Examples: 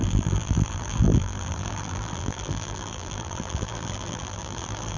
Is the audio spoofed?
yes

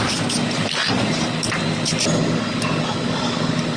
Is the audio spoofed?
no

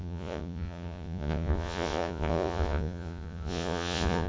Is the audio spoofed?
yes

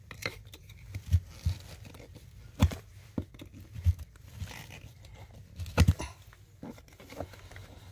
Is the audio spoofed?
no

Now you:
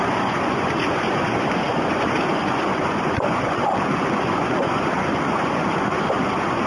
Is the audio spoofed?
yes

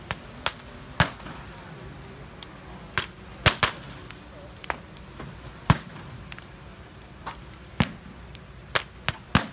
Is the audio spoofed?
no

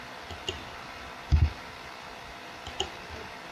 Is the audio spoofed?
no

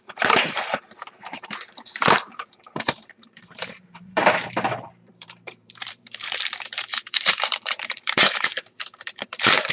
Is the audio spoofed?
yes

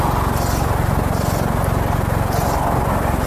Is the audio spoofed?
no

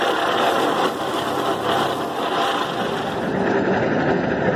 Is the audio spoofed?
no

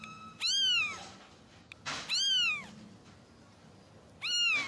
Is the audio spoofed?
no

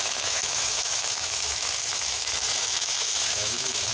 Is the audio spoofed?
yes